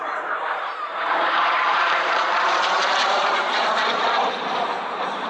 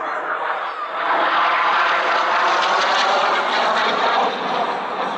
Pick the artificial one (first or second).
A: first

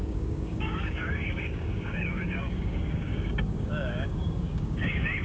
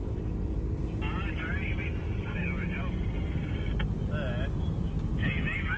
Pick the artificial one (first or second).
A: first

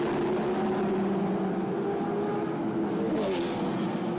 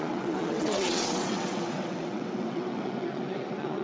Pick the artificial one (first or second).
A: second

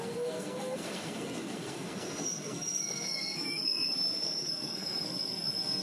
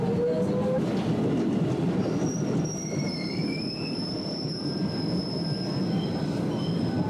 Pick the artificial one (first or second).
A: first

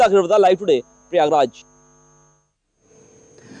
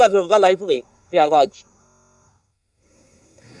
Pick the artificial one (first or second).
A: second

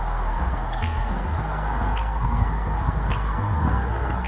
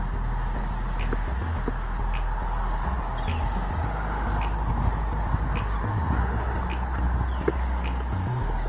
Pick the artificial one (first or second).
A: first